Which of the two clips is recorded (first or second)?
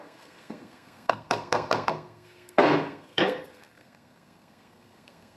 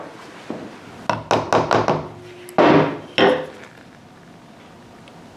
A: second